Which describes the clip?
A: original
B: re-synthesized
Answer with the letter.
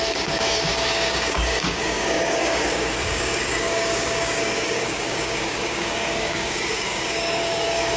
B